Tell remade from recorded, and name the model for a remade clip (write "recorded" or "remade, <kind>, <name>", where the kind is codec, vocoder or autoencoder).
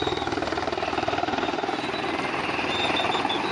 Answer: recorded